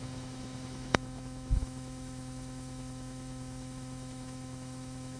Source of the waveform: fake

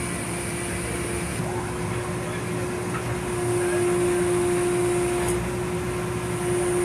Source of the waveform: real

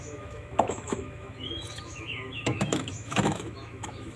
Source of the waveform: fake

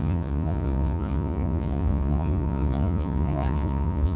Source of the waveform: fake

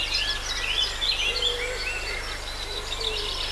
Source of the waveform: real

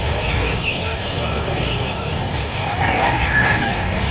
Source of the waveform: fake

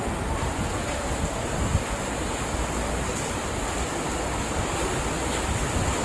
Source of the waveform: real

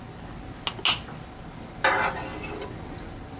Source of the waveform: real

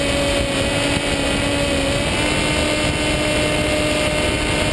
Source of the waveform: real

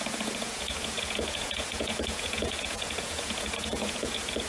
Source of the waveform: fake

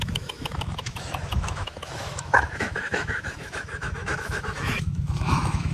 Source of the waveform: fake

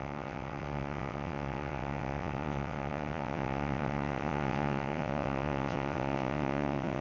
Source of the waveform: fake